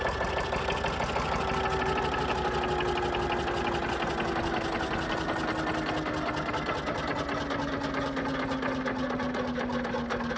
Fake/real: real